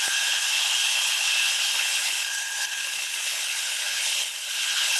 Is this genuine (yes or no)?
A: no